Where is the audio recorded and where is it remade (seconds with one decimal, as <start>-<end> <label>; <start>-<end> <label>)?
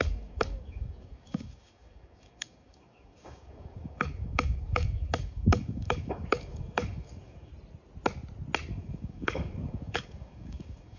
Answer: 0.0-7.5 remade; 7.5-8.8 recorded; 8.8-11.0 remade